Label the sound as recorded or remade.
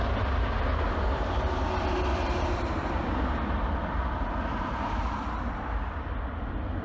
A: recorded